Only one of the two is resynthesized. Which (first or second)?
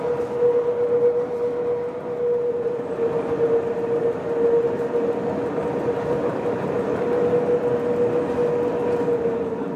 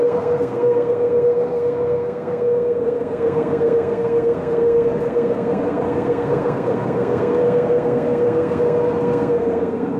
second